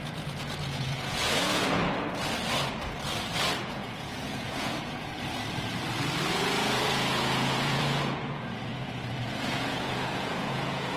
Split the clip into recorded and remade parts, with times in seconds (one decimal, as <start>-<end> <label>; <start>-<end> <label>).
0.0-1.8 remade; 1.8-3.6 recorded; 3.6-5.1 remade; 5.1-6.3 recorded; 6.3-8.7 remade; 8.7-9.4 recorded; 9.4-11.0 remade